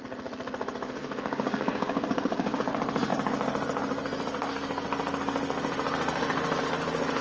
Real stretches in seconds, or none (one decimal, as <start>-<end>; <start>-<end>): 0.0-1.0; 2.6-7.2